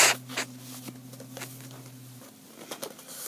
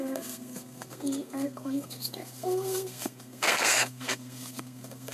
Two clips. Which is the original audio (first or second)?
first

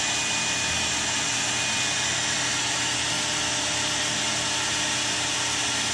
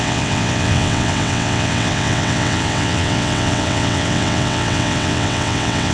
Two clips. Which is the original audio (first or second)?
first